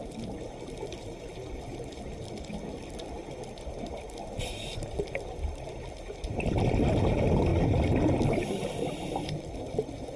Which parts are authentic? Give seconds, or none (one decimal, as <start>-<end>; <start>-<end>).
0.0-10.2